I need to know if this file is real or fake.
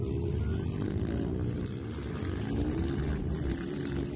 real